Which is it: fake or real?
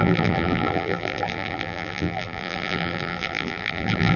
fake